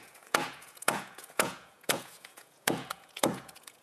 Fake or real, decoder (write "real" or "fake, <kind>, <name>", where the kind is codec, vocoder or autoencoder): fake, vocoder, Vocos